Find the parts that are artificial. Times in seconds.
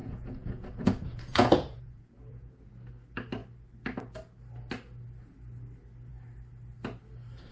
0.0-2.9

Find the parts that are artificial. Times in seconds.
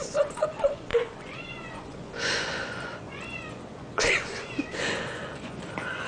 0.0-6.1